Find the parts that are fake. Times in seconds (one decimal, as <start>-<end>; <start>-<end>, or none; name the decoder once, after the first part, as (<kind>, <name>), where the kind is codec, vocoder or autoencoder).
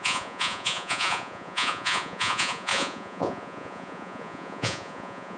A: 0.0-5.4 (vocoder, Vocos)